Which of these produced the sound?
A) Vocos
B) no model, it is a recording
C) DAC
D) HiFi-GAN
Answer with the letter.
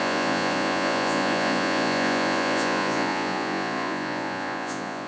A